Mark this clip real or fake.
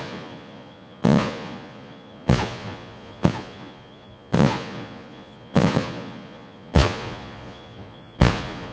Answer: fake